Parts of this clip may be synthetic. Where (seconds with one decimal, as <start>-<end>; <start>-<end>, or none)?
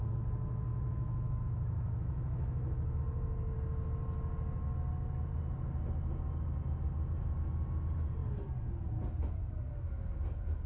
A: 0.7-3.0